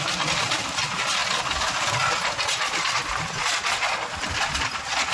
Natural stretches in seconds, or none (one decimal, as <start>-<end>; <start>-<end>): 0.0-5.1